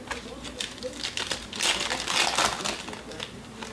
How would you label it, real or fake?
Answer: real